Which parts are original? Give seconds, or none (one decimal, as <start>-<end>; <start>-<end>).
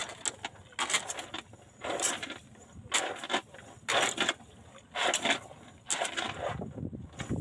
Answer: 0.0-7.4